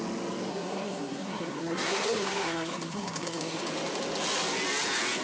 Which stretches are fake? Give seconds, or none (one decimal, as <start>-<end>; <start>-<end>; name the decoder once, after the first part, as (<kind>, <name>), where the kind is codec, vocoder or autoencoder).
0.5-3.6 (codec, SNAC)